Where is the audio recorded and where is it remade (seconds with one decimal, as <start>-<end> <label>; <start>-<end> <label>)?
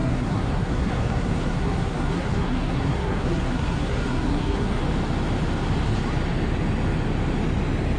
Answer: 0.0-4.8 remade; 4.8-8.0 recorded